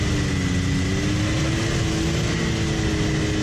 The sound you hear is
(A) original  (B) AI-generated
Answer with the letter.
A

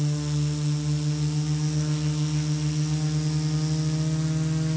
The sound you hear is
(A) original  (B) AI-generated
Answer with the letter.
A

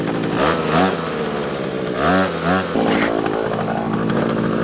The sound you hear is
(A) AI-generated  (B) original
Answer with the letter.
B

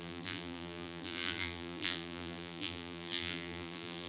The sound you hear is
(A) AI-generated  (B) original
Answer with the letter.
A